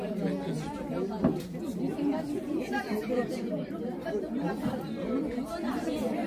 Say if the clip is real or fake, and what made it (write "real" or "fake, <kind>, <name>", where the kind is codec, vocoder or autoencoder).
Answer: fake, vocoder, BigVGAN v2